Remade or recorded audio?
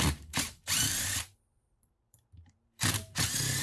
remade